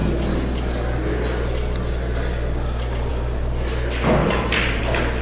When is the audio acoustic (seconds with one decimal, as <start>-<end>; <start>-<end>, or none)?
0.0-4.2; 4.8-5.2